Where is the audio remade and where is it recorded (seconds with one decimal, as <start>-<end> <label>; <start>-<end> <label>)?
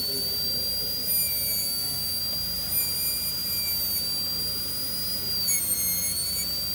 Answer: 0.0-1.6 recorded; 1.6-2.2 remade; 2.2-6.7 recorded